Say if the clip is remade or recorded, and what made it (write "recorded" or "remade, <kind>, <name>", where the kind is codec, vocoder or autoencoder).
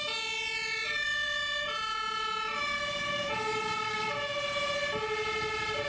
remade, vocoder, BigVGAN v2